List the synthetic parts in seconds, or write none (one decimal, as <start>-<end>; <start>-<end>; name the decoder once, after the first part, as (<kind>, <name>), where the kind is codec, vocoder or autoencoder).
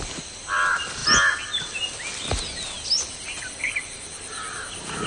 none